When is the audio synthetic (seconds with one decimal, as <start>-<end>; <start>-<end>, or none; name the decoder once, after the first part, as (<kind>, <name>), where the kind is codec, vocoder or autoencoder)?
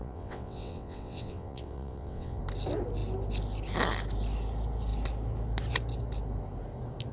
0.0-2.4 (vocoder, WaveNeXt)